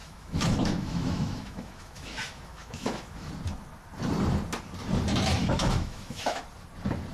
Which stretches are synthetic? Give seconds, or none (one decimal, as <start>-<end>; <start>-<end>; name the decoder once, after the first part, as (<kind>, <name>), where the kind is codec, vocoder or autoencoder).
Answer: 0.0-3.3 (autoencoder, DAC-VAE); 5.4-6.4